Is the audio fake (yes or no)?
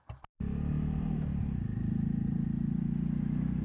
no